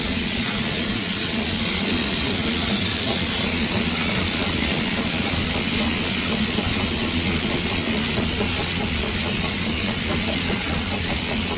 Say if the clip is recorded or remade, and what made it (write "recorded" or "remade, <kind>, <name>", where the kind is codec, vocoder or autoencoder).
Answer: remade, vocoder, Vocos